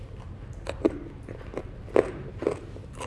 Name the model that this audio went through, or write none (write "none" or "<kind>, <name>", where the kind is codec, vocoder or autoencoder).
none